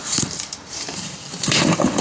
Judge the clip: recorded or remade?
remade